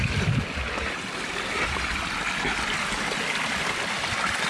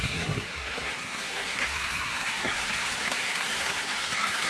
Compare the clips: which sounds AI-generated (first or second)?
second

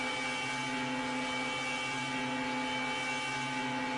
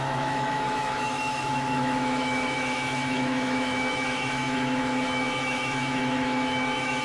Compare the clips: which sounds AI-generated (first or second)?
second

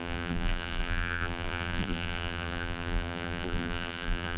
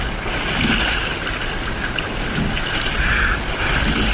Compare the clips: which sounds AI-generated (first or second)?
first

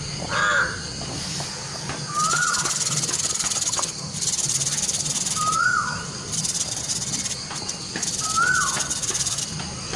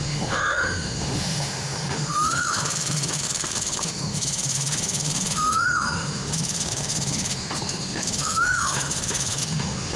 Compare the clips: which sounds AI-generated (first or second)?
second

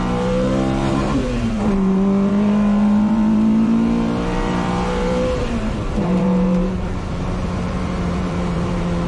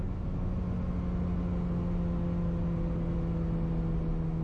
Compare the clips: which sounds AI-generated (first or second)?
first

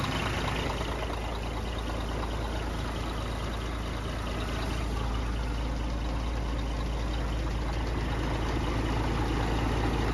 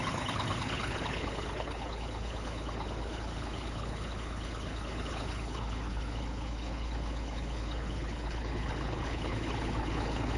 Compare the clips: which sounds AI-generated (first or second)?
second